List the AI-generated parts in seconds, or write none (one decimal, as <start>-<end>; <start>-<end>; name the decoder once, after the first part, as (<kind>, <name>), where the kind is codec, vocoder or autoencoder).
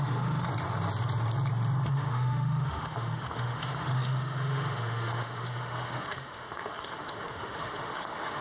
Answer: 0.0-0.5 (autoencoder, DAC-VAE); 1.9-8.4